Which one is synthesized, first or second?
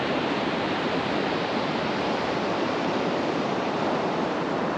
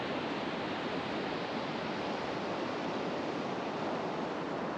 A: first